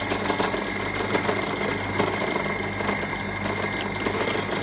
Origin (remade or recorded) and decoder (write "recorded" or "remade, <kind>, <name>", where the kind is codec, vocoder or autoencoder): recorded